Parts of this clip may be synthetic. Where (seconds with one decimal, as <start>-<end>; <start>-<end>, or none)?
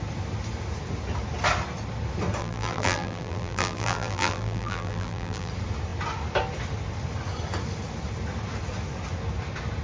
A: 2.4-5.5